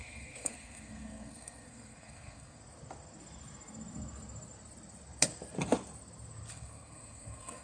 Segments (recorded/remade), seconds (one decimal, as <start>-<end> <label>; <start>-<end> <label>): 0.0-2.6 remade; 2.6-6.5 recorded; 6.5-7.6 remade